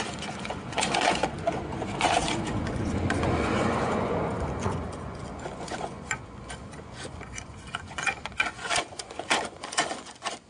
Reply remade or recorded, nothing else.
remade